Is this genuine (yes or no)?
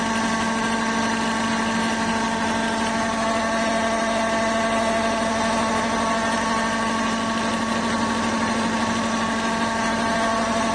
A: yes